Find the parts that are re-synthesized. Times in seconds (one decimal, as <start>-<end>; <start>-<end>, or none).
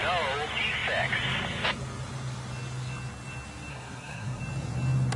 3.7-4.4